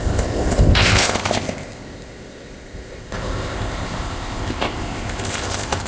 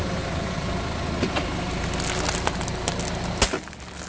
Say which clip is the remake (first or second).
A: first